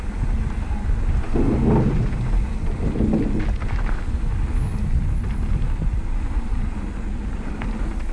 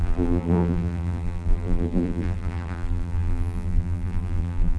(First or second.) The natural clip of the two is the first